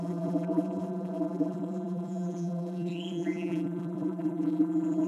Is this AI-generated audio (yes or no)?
yes